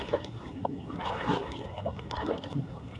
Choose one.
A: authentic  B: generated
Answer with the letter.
B